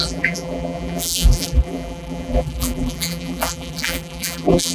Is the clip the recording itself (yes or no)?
no